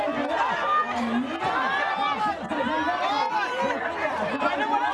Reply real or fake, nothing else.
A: real